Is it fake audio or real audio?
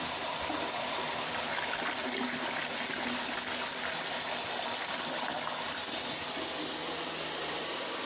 real